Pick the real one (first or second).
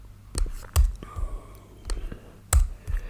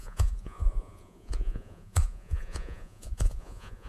first